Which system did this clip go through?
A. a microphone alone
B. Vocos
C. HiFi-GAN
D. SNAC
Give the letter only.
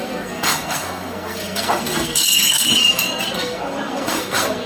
D